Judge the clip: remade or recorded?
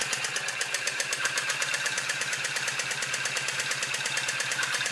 remade